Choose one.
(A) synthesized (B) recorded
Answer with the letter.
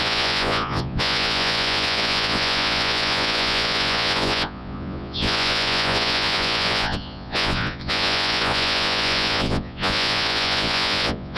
A